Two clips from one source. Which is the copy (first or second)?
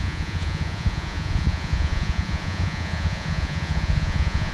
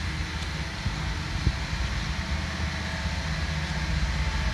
first